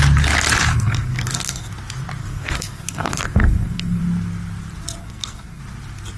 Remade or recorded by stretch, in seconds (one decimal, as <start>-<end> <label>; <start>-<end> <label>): 0.0-0.7 recorded; 0.7-1.7 remade; 1.7-2.2 recorded; 2.2-4.0 remade; 4.0-5.0 recorded; 5.0-5.6 remade; 5.6-6.2 recorded

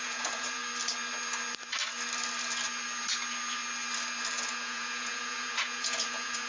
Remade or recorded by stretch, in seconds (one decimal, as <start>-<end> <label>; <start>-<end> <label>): 0.0-0.6 remade; 0.6-4.5 recorded; 4.5-6.5 remade

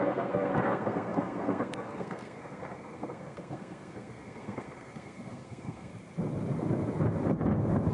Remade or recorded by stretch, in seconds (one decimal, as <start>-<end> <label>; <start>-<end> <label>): 0.0-5.9 remade; 5.9-7.9 recorded

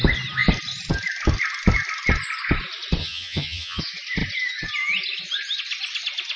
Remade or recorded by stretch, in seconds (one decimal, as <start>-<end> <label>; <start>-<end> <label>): 0.0-3.0 recorded; 3.0-3.8 remade; 3.8-6.4 recorded

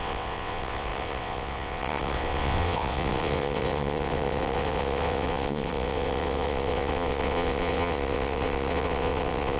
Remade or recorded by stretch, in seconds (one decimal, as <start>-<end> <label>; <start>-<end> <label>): 0.0-9.6 remade

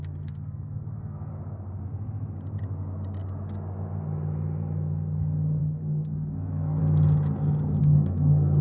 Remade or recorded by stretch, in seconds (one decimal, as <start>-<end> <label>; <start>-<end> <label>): 0.0-1.3 remade; 1.3-5.6 recorded; 5.6-6.8 remade; 6.8-7.8 recorded; 7.8-8.6 remade

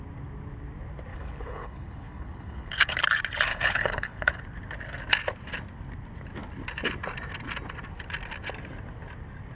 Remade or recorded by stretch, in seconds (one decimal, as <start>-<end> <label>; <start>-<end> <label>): 0.0-1.1 recorded; 1.1-3.0 remade; 3.0-3.5 recorded; 3.5-4.4 remade; 4.4-9.6 recorded